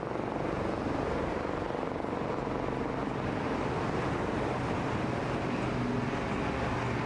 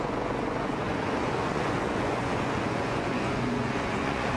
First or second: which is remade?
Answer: second